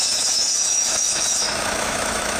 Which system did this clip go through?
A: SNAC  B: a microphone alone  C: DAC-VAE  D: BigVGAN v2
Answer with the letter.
C